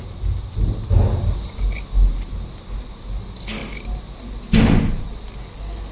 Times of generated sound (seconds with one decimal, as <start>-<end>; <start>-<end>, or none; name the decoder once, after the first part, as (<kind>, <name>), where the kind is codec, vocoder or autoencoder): none